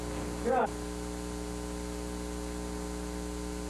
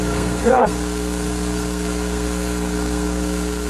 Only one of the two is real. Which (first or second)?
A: first